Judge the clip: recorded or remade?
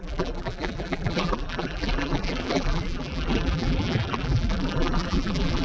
remade